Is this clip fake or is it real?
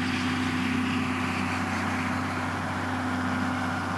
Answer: real